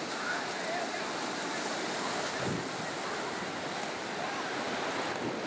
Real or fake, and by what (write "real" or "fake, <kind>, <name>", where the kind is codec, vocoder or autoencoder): real